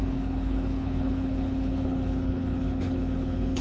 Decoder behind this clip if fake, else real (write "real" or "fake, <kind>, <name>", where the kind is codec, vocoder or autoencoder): fake, codec, HILCodec